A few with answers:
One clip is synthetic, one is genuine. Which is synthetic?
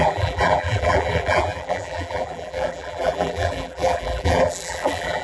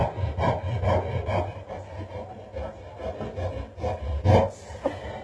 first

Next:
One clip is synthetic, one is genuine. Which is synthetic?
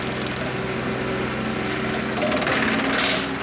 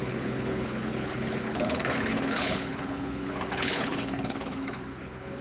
second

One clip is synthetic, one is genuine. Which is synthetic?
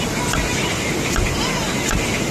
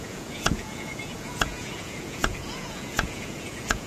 second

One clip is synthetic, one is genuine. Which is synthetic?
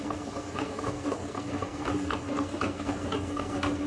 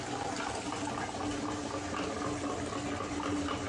first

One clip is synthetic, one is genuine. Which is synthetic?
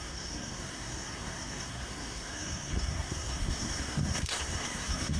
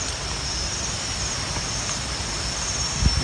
first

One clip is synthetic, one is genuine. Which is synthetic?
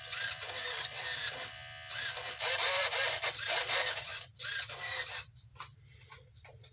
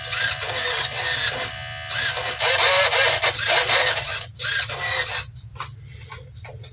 first